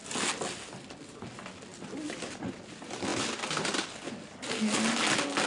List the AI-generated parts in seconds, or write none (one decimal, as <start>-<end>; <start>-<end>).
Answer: none